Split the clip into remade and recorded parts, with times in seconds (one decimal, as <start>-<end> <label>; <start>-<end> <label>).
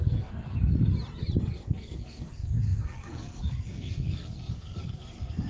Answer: 0.0-0.9 remade; 0.9-1.4 recorded; 1.4-5.5 remade